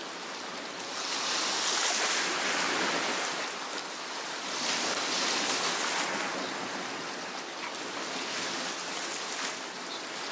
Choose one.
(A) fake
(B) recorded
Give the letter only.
B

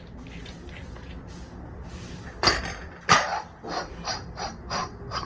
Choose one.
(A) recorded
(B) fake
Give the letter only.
A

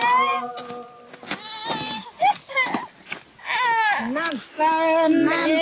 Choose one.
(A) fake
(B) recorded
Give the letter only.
B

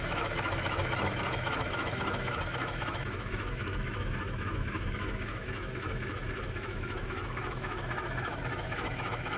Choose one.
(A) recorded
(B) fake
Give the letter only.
B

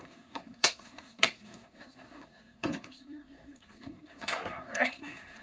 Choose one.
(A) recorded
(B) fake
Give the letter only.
B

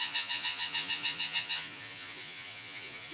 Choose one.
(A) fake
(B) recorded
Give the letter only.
A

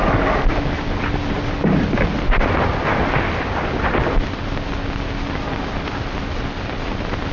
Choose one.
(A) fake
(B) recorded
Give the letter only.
B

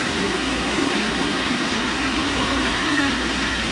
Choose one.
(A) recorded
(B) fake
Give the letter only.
B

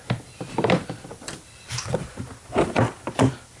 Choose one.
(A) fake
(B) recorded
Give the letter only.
A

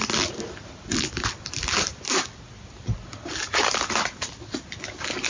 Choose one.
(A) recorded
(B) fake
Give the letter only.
A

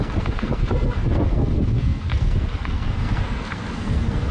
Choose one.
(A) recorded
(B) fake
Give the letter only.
B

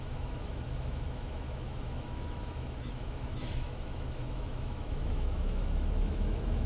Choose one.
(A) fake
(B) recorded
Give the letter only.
A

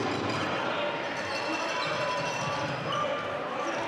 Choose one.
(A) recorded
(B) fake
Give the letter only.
A